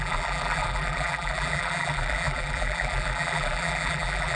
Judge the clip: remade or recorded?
remade